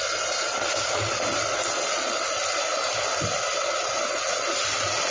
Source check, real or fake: real